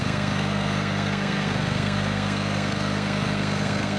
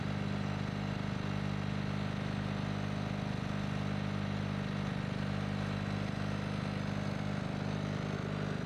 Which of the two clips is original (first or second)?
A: second